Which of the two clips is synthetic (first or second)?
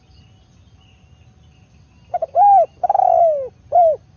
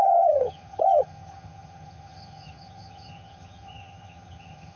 second